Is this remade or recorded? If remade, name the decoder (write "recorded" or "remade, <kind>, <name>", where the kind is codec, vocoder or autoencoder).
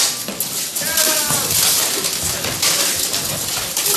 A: recorded